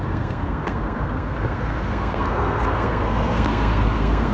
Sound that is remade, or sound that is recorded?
remade